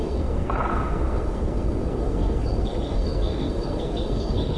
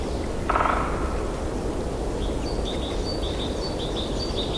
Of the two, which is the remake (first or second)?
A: first